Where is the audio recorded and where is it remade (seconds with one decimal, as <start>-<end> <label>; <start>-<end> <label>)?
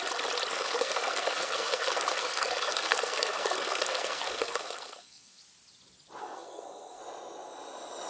0.0-0.5 recorded; 0.5-5.4 remade; 5.4-6.2 recorded; 6.2-7.0 remade; 7.0-8.1 recorded